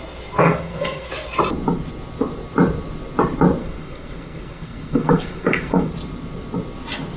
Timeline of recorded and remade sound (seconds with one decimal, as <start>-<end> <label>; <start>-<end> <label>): 0.0-0.4 recorded; 0.4-1.1 remade; 1.1-3.6 recorded; 3.6-5.9 remade; 5.9-7.2 recorded